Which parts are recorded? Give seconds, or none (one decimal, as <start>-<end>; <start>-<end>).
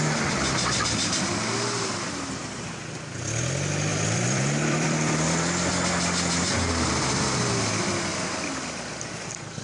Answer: 0.0-3.9; 5.7-9.6